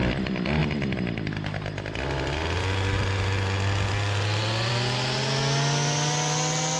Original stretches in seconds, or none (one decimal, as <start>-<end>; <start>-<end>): 0.0-6.8